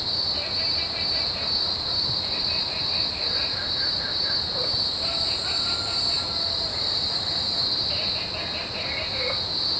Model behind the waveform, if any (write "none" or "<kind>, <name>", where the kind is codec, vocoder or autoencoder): none